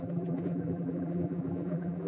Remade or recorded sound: remade